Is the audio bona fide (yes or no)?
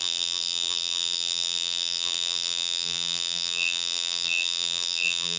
no